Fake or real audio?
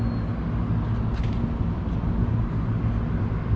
real